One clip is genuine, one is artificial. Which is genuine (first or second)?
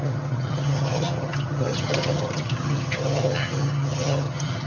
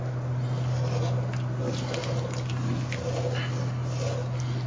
second